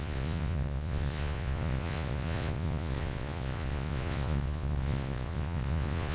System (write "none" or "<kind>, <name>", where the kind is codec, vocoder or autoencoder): vocoder, Vocos